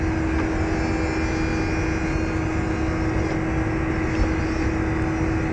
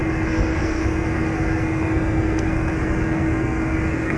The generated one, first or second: second